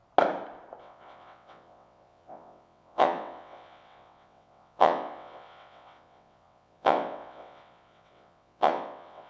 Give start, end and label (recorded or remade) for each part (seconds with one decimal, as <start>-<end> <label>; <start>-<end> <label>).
0.0-0.8 recorded; 0.8-9.3 remade